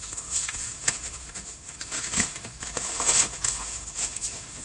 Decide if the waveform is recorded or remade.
remade